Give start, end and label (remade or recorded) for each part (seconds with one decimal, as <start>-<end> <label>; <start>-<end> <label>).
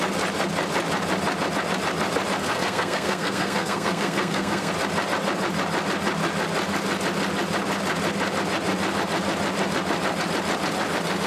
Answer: 0.0-2.4 recorded; 2.4-4.7 remade; 4.7-11.3 recorded